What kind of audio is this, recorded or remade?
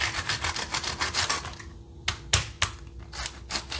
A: recorded